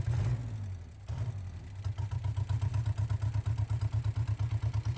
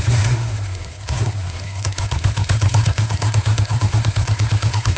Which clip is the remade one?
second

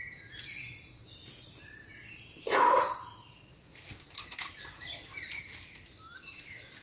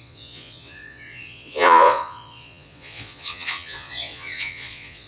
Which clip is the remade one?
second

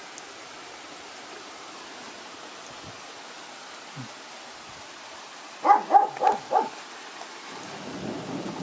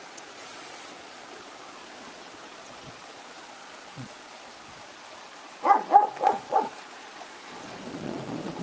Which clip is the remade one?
second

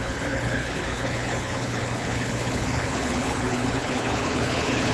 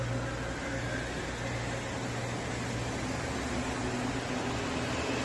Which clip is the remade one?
first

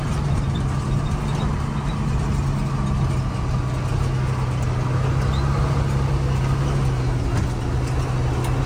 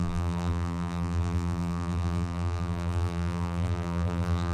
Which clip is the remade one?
second